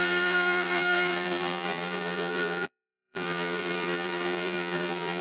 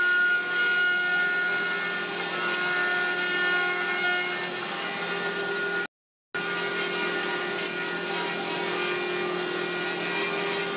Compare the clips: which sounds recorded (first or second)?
second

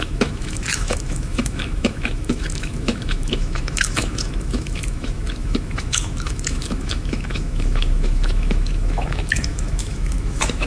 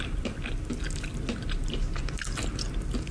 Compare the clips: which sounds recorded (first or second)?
second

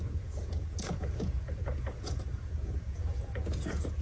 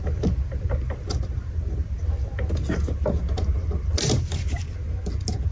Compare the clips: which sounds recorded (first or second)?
second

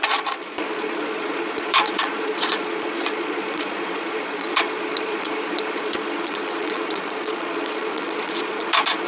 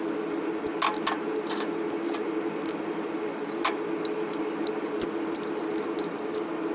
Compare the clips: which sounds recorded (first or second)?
second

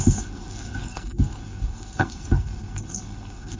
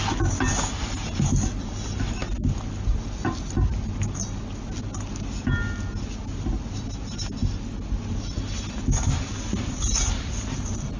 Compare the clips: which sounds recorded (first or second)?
second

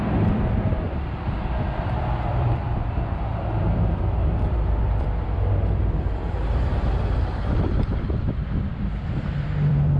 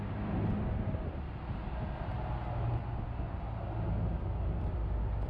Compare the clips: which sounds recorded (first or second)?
second